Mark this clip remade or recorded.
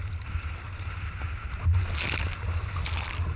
recorded